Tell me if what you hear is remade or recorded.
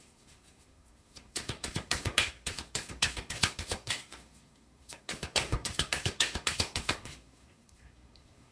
remade